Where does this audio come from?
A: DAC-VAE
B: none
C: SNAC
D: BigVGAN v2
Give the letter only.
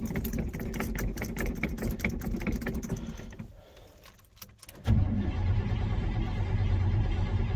B